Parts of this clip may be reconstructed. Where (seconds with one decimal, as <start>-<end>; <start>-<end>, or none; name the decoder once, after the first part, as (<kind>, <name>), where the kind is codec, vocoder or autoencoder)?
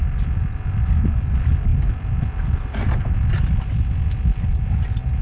none